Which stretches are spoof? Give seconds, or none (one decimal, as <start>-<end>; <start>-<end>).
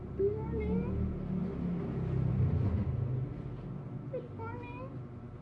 none